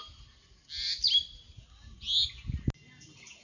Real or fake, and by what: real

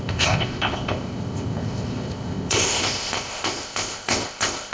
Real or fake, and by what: fake, codec, ZipCodec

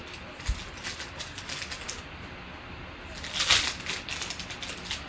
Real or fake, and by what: real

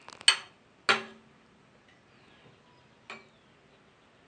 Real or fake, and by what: real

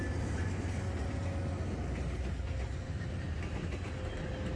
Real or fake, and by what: real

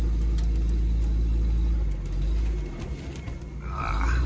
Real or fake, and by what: real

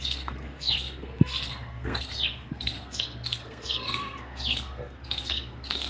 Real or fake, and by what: fake, codec, SNAC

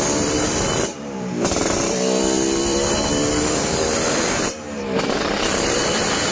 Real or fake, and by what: fake, vocoder, BigVGAN v2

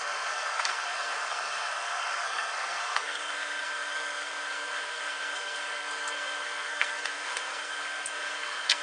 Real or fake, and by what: fake, codec, SNAC